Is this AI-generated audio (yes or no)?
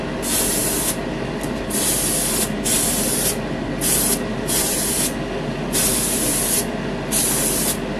no